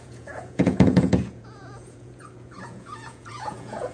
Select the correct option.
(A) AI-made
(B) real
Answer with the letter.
A